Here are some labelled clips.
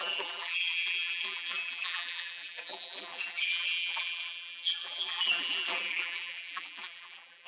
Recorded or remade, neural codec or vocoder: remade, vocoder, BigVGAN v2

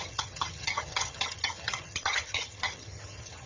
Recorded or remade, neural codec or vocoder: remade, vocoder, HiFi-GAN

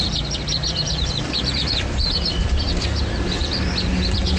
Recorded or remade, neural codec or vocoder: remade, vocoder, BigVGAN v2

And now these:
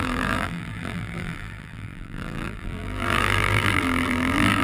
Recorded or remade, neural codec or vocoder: remade, vocoder, BigVGAN v2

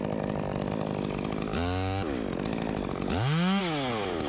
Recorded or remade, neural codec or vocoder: recorded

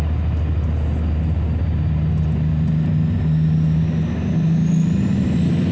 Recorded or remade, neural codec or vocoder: recorded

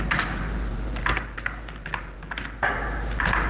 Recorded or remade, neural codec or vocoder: recorded